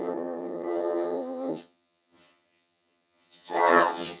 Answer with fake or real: fake